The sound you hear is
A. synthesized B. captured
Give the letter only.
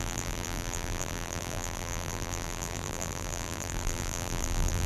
A